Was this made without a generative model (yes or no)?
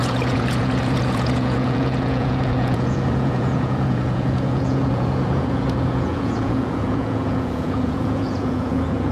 no